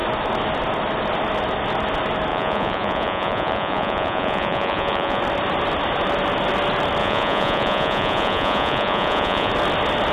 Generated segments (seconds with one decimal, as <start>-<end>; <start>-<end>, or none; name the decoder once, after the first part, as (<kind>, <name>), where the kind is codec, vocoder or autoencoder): 2.3-5.2 (vocoder, Vocos); 7.0-9.5